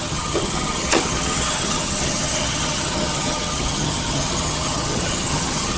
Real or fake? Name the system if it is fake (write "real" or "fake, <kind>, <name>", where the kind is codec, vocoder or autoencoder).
fake, vocoder, HiFi-GAN